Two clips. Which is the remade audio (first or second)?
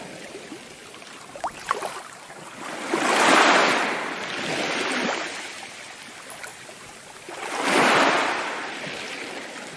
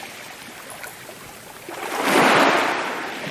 first